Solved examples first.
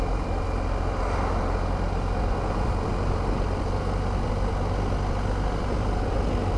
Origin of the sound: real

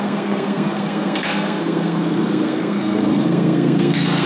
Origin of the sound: fake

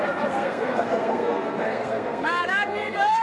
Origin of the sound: fake